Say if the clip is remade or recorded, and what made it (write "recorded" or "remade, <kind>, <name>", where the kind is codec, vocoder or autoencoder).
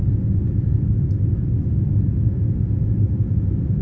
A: recorded